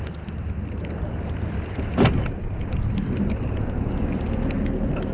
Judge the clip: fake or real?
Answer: real